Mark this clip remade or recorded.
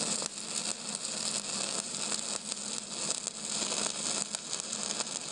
recorded